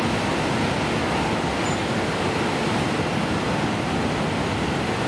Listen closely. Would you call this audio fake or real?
real